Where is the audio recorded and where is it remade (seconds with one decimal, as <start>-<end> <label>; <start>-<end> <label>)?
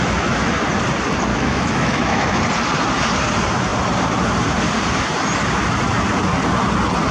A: 0.0-0.5 remade; 0.5-1.3 recorded; 1.3-2.4 remade; 2.4-7.1 recorded